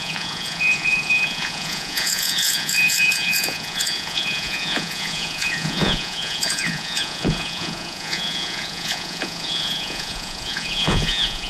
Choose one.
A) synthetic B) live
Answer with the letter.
A